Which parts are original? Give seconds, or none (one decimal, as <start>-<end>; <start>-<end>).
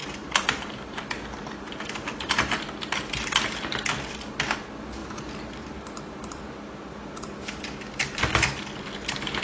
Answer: 1.1-5.0; 6.0-9.4